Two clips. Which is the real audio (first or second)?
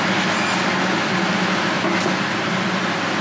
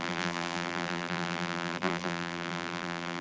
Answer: first